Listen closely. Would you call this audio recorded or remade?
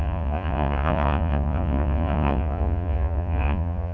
remade